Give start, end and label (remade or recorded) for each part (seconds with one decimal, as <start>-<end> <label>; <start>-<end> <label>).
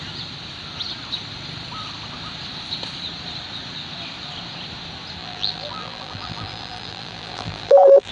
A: 0.0-5.2 recorded; 5.2-8.1 remade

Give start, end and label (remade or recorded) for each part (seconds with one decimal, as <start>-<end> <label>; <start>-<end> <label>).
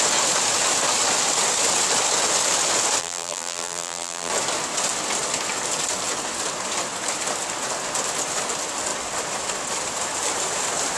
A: 0.0-3.0 recorded; 3.0-4.3 remade; 4.3-11.0 recorded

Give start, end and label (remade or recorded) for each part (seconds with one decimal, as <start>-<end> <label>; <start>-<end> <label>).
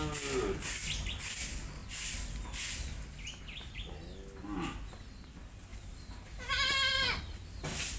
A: 0.0-5.7 recorded; 5.7-6.5 remade; 6.5-8.0 recorded